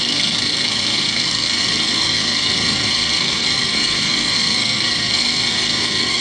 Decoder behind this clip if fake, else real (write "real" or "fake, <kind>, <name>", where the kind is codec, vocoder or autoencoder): fake, codec, SNAC